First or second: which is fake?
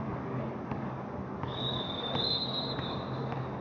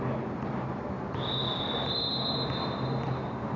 first